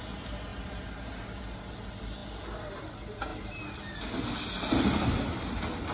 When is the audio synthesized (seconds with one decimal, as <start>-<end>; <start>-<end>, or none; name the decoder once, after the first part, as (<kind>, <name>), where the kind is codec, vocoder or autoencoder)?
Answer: none